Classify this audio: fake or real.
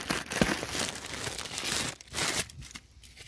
real